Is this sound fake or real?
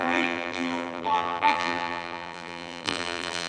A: fake